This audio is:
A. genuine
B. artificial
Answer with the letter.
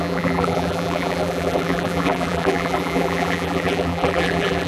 B